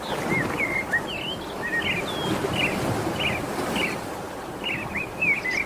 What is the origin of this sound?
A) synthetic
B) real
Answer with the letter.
B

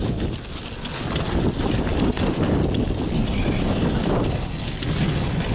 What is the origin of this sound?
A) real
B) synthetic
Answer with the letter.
A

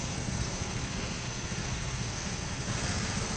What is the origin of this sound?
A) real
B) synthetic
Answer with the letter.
B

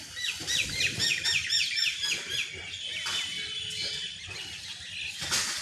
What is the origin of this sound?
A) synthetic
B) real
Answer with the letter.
B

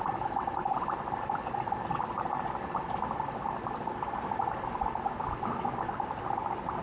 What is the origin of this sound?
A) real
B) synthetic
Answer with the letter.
A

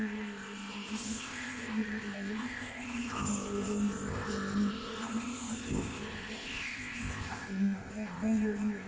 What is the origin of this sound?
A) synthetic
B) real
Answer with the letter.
A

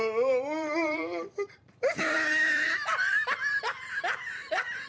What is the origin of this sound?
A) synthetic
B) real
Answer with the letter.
A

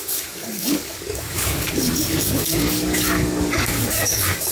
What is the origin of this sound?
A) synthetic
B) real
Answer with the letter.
A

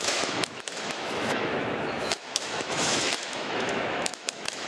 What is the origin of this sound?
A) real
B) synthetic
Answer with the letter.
B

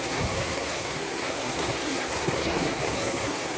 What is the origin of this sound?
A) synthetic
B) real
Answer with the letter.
A